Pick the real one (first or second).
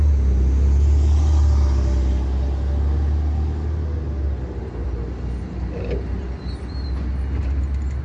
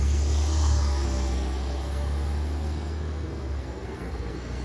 first